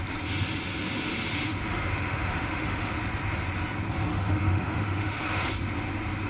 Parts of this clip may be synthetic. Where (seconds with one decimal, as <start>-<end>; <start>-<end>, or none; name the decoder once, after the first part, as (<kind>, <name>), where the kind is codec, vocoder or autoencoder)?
1.3-2.9 (autoencoder, DAC-VAE); 4.1-5.5